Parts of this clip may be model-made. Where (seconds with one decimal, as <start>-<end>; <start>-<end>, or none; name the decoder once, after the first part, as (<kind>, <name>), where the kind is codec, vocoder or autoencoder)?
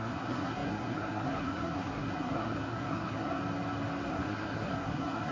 0.0-3.4 (codec, SNAC); 4.1-5.3